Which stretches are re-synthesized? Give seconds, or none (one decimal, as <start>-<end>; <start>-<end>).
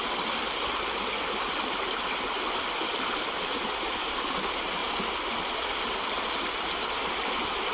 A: none